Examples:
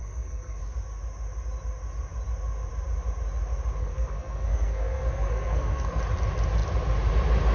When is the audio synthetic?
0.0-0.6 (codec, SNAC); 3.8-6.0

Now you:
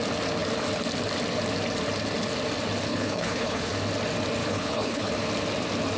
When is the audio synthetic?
2.9-3.7 (codec, HILCodec); 4.4-5.1

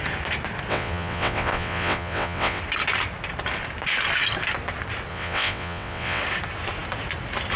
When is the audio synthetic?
0.7-2.6 (vocoder, WaveNeXt); 5.1-6.2

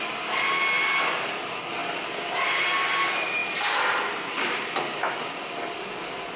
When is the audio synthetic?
0.0-1.8 (vocoder, BigVGAN v2); 2.6-6.4

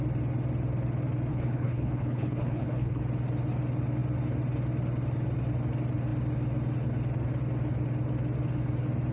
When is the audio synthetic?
1.3-3.0 (codec, HILCodec)

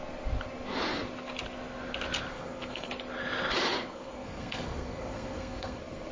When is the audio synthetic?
2.3-2.9 (codec, SNAC); 3.9-6.1

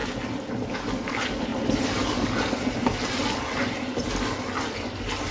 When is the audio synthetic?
none

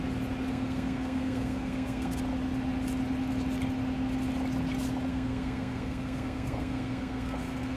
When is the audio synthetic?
0.5-2.2 (codec, SNAC); 5.1-7.8